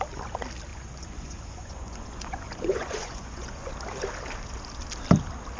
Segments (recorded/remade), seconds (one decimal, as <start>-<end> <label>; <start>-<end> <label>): 0.0-0.7 recorded; 0.7-3.7 remade; 3.7-5.6 recorded